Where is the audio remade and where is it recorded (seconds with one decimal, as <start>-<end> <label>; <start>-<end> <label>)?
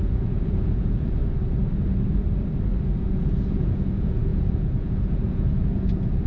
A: 0.0-1.2 remade; 1.2-3.0 recorded; 3.0-6.3 remade